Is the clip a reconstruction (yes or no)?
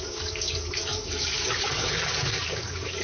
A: yes